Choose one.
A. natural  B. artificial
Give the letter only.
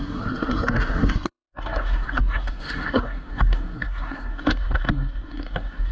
B